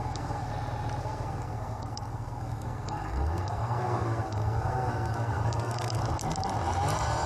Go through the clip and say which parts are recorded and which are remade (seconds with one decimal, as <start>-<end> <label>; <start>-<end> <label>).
0.0-0.5 remade; 0.5-1.0 recorded; 1.0-6.0 remade; 6.0-7.3 recorded